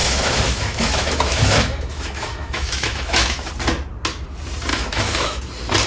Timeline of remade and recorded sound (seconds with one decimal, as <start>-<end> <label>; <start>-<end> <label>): 0.0-3.5 remade; 3.5-4.7 recorded; 4.7-5.4 remade; 5.4-5.9 recorded